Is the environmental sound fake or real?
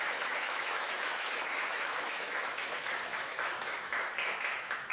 fake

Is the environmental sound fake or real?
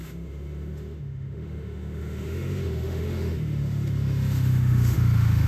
fake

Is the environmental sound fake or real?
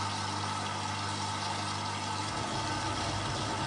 real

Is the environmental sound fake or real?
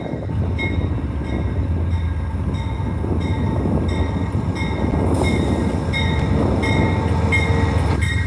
real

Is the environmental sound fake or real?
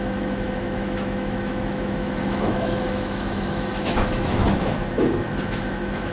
fake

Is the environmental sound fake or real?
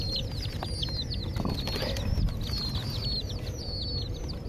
real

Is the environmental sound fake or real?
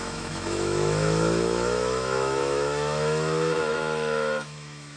fake